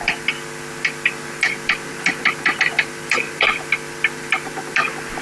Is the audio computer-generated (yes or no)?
yes